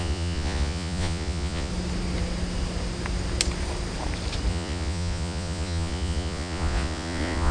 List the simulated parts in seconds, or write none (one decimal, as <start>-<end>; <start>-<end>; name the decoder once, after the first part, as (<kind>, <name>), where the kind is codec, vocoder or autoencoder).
0.0-1.7 (vocoder, Vocos); 4.5-7.5